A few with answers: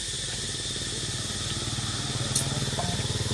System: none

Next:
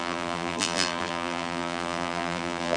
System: vocoder, BigVGAN v2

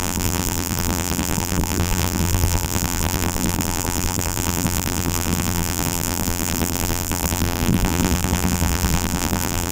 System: vocoder, BigVGAN v2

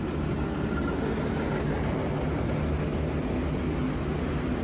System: none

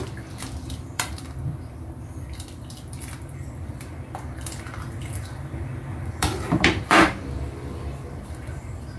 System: vocoder, BigVGAN v2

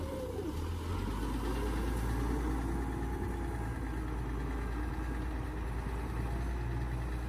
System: none